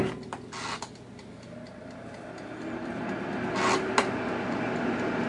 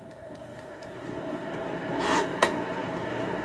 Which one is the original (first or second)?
first